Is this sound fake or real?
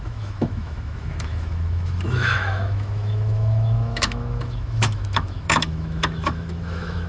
fake